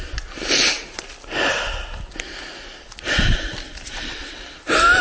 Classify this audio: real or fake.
real